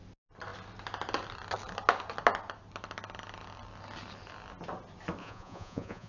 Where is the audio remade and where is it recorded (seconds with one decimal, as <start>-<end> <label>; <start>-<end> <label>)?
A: 0.0-5.2 recorded; 5.2-6.1 remade